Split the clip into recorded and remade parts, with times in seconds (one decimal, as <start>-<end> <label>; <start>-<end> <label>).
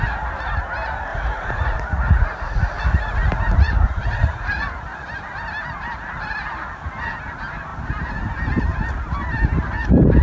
0.0-1.1 recorded; 1.1-4.5 remade; 4.5-10.2 recorded